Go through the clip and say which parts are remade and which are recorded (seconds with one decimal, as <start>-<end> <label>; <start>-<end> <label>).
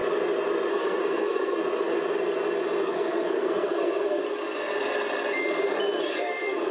0.0-0.7 recorded; 0.7-1.6 remade; 1.6-2.8 recorded; 2.8-4.2 remade; 4.2-6.2 recorded; 6.2-6.7 remade